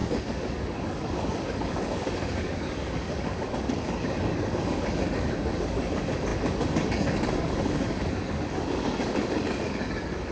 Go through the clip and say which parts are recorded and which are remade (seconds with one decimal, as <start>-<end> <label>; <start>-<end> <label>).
0.0-10.3 remade